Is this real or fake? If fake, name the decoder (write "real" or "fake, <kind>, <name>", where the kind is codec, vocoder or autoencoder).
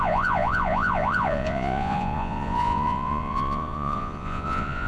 fake, vocoder, Vocos